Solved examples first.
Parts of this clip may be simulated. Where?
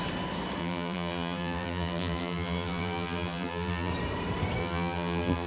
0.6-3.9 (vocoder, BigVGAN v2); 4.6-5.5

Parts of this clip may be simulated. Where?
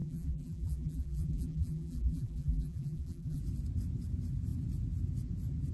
0.0-3.4 (vocoder, BigVGAN v2)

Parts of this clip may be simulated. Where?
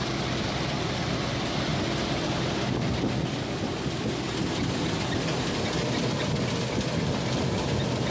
none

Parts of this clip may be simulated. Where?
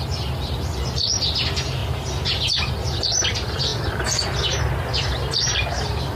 0.0-1.8 (vocoder, BigVGAN v2); 2.7-3.7; 5.4-6.1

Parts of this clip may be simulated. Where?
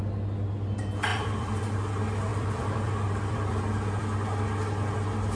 1.1-1.6 (vocoder, BigVGAN v2); 2.3-3.6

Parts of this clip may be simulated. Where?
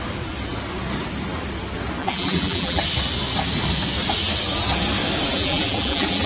2.0-2.8 (vocoder, BigVGAN v2); 5.3-6.3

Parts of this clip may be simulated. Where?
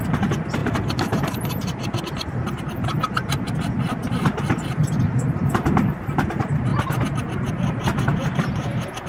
0.6-2.0 (vocoder, BigVGAN v2)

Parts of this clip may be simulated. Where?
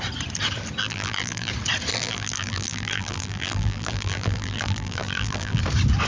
0.8-1.5 (vocoder, BigVGAN v2); 1.9-5.6